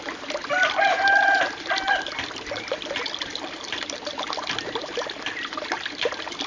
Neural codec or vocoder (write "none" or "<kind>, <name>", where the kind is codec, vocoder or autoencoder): none